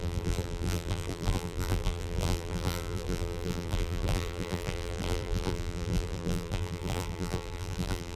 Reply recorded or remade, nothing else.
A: remade